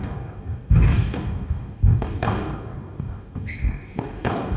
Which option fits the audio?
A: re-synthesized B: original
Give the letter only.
A